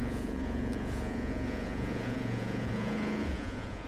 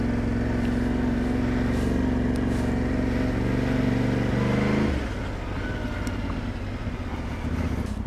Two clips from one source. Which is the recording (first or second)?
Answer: second